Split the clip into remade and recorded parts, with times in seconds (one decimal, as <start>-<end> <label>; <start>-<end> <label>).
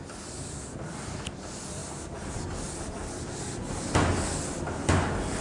0.0-5.4 recorded